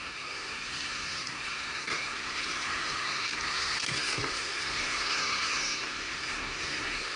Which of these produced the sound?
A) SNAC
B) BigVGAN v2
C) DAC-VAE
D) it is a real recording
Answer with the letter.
A